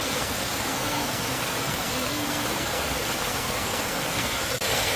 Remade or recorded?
remade